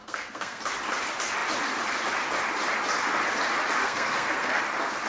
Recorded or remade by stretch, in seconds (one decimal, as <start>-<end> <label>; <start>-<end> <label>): 0.0-0.6 remade; 0.6-3.8 recorded; 3.8-4.6 remade; 4.6-5.1 recorded